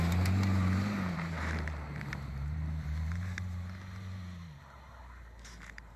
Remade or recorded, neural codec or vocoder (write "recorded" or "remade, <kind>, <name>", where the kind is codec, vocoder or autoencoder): remade, vocoder, BigVGAN v2